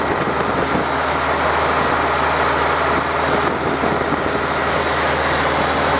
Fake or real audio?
real